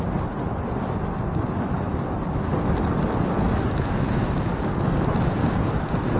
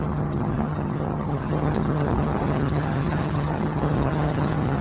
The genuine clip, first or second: first